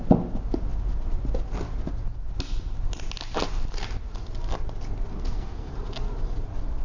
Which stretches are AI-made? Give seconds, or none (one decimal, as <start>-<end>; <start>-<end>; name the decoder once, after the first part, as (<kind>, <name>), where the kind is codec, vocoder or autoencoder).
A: 5.1-5.7 (codec, SNAC)